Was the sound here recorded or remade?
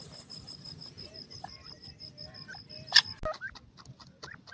recorded